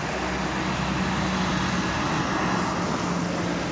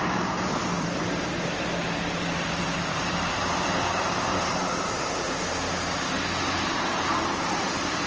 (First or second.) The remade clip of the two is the second